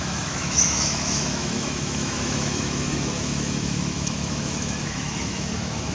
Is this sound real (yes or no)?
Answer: no